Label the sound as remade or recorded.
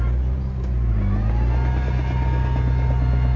recorded